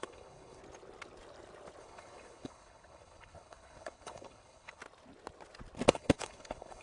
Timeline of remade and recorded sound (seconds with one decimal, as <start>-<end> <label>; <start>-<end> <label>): 0.0-0.6 remade; 0.6-1.8 recorded; 1.8-4.8 remade; 4.8-5.9 recorded; 5.9-6.8 remade